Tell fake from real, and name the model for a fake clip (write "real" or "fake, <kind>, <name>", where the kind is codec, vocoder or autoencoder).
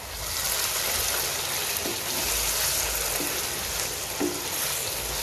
real